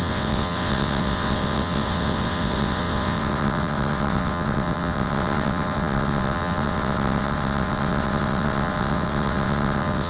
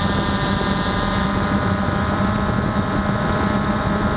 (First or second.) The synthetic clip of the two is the first